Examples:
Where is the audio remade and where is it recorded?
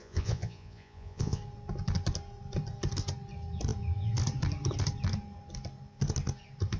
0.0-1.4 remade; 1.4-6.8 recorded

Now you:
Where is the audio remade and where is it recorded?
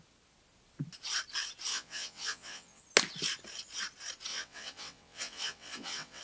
0.0-1.7 recorded; 1.7-2.8 remade; 2.8-4.3 recorded; 4.3-6.2 remade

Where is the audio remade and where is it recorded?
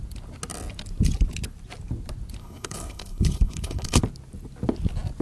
0.0-2.4 recorded; 2.4-4.0 remade; 4.0-5.2 recorded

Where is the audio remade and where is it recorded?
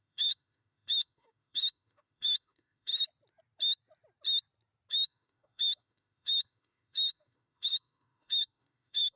0.0-2.9 remade; 2.9-4.9 recorded; 4.9-9.2 remade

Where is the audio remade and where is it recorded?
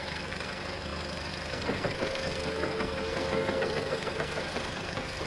0.0-5.3 remade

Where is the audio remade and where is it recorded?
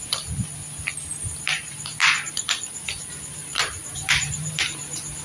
0.0-1.1 recorded; 1.1-2.3 remade; 2.3-3.4 recorded; 3.4-4.6 remade; 4.6-5.2 recorded